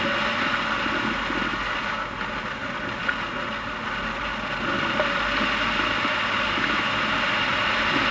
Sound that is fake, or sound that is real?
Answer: real